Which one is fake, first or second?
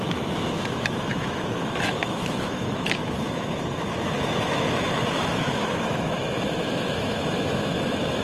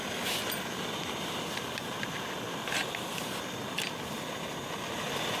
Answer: first